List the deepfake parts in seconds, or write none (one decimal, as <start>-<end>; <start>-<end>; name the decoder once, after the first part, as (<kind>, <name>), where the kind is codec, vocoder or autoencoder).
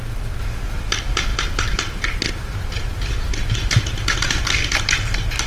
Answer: none